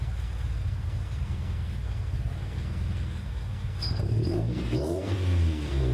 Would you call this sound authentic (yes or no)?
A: no